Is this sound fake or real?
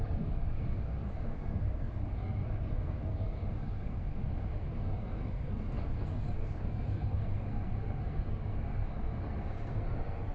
fake